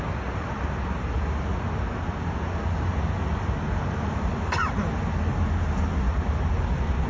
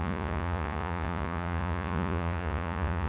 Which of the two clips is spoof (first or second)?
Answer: second